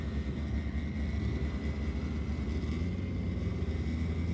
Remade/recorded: recorded